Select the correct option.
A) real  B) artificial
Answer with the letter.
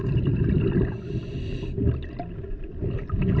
A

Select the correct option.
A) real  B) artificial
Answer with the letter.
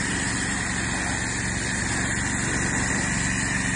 A